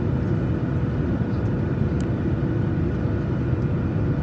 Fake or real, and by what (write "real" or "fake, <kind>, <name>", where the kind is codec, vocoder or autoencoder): real